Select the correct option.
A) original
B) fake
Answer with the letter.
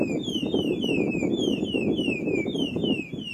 A